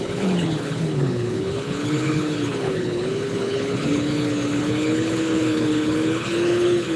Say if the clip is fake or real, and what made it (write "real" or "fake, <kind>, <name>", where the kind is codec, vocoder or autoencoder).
fake, codec, HILCodec